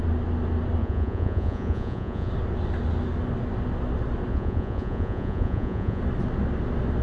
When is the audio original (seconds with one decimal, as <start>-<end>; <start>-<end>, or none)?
0.0-0.8; 2.3-4.3; 6.0-7.0